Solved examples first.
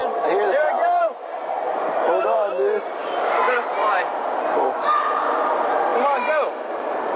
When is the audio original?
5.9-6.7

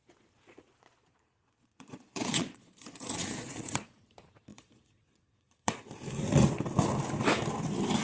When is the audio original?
4.0-4.5; 5.8-8.0

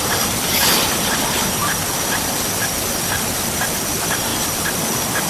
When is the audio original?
0.0-5.3

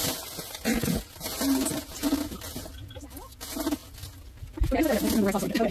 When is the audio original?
0.0-5.7

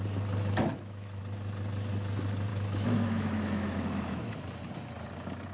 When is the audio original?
0.0-0.7; 1.2-2.5; 4.4-5.5

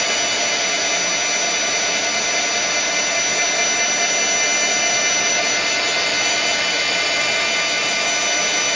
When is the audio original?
0.0-8.8

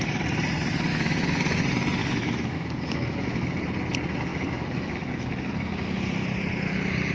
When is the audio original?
0.0-0.9; 1.6-2.0; 3.5-4.3; 5.5-7.1